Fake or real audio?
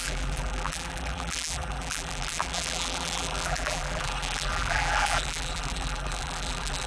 fake